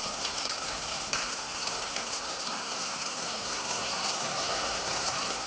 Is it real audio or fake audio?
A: fake